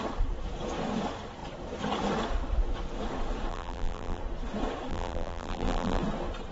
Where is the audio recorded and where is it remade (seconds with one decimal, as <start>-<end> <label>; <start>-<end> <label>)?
0.0-3.5 recorded; 3.5-4.2 remade; 4.2-4.9 recorded; 4.9-6.0 remade; 6.0-6.5 recorded